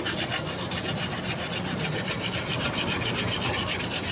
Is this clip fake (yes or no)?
no